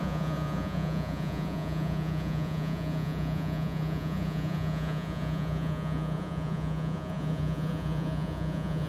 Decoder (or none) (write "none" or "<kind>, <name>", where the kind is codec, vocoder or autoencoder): vocoder, Vocos